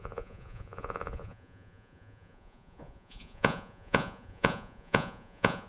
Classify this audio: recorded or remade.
remade